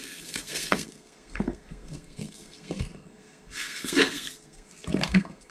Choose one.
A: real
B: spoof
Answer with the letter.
B